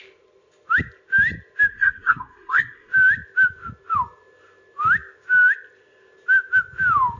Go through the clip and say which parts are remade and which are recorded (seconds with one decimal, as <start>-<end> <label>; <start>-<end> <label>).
0.0-1.7 recorded; 1.7-2.9 remade; 2.9-7.2 recorded